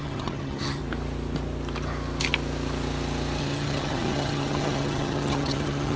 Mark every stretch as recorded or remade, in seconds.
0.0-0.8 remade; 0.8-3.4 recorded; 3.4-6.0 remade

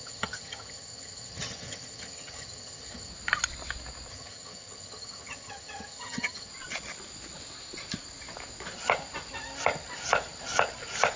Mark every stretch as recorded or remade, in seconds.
0.0-3.1 remade; 3.1-4.1 recorded; 4.1-6.5 remade; 6.5-11.2 recorded